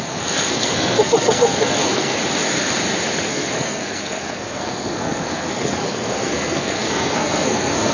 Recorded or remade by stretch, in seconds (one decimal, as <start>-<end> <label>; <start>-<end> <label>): 0.0-2.2 remade; 2.2-3.3 recorded; 3.3-7.9 remade